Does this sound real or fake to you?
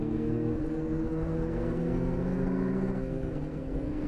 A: fake